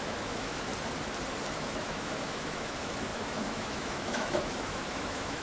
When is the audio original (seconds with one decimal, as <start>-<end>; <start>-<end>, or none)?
0.7-1.5